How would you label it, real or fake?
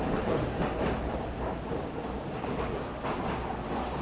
real